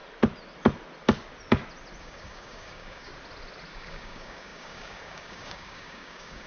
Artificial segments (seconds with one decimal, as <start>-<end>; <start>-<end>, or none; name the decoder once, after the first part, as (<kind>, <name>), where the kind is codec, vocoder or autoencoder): 2.0-3.1 (codec, DAC); 3.7-6.5